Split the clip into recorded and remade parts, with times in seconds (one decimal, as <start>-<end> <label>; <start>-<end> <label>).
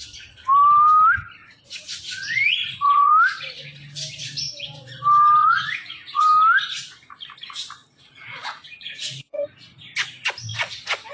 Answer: 0.0-1.4 recorded; 1.4-3.1 remade; 3.1-5.4 recorded; 5.4-6.2 remade; 6.2-7.8 recorded; 7.8-9.8 remade; 9.8-11.1 recorded